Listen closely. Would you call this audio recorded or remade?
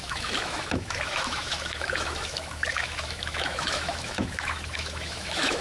remade